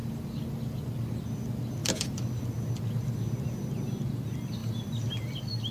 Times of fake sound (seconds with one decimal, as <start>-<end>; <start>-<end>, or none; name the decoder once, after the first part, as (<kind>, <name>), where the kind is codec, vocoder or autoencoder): 0.0-0.8 (vocoder, BigVGAN v2); 1.8-3.6; 4.6-5.7